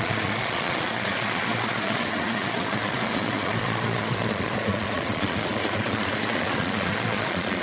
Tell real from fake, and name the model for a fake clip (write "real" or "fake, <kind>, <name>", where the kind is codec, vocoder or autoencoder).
fake, vocoder, Vocos